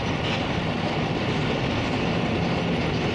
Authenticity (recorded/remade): recorded